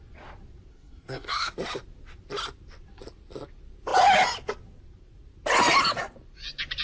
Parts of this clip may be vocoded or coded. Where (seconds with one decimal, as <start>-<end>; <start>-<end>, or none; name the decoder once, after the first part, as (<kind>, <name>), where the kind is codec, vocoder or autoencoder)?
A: 0.7-1.5 (codec, SNAC)